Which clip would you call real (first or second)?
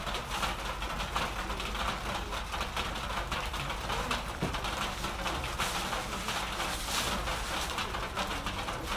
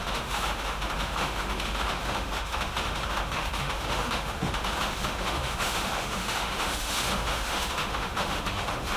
first